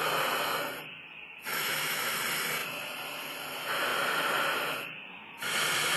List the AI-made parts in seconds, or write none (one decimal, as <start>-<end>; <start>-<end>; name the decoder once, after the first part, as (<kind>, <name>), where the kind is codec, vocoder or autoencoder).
1.5-2.2 (autoencoder, DAC-VAE)